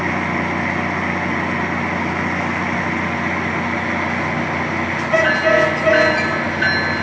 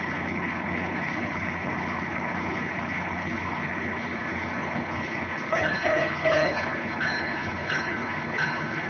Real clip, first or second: first